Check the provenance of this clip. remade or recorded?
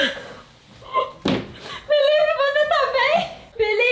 recorded